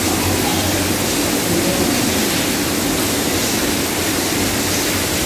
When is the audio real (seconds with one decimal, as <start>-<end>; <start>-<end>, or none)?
0.0-5.3